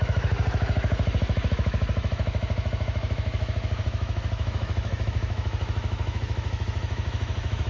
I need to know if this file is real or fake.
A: fake